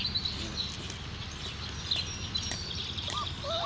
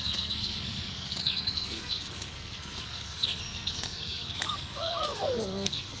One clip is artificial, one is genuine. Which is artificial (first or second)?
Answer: second